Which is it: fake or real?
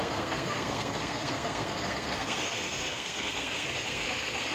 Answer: fake